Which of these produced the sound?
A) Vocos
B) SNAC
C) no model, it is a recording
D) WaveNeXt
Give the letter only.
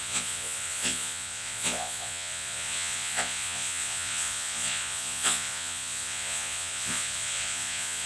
A